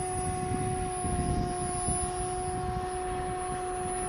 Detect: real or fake real